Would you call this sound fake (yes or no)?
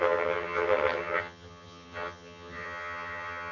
yes